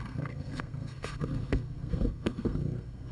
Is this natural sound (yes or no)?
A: no